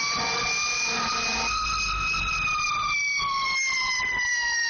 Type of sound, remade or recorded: remade